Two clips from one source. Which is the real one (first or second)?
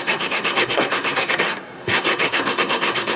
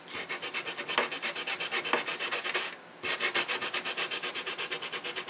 second